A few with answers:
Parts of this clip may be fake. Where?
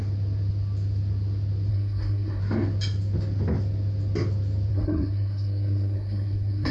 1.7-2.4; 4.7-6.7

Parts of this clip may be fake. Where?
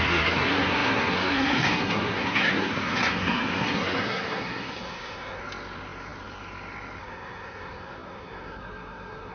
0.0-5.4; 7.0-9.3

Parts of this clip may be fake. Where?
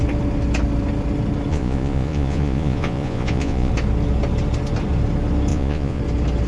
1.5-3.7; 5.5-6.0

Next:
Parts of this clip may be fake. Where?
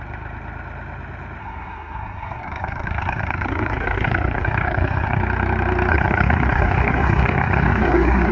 1.4-5.2; 5.9-8.3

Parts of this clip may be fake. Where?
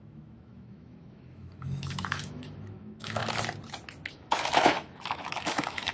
0.0-3.2; 4.1-5.9